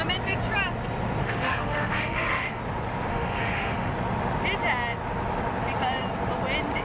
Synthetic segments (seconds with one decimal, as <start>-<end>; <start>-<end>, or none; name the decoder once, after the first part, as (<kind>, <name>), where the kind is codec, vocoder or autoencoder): 1.2-2.6 (autoencoder, DAC-VAE); 3.1-3.9